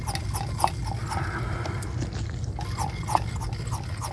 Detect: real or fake real